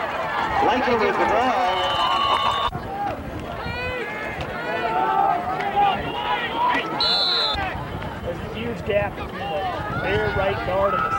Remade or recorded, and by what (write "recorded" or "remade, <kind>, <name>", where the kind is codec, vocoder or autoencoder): recorded